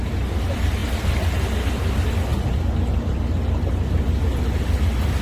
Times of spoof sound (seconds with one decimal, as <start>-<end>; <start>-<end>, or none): none